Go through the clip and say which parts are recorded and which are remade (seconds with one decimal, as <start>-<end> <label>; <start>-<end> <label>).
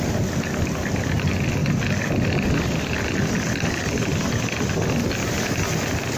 0.0-6.2 recorded